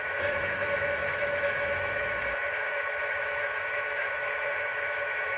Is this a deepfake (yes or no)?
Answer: yes